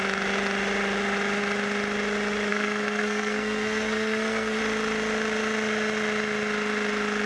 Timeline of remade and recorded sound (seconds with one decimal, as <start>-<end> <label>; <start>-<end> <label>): 0.0-2.5 recorded; 2.5-4.6 remade; 4.6-7.3 recorded